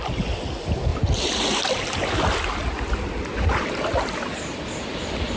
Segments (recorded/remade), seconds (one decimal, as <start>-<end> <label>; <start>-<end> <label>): 0.0-5.4 recorded